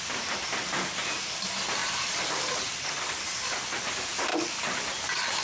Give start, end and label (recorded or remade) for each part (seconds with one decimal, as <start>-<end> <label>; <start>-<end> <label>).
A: 0.0-4.3 recorded; 4.3-5.0 remade; 5.0-5.4 recorded